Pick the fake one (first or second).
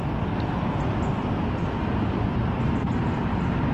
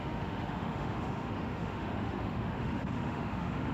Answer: second